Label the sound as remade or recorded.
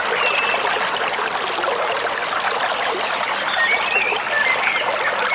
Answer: recorded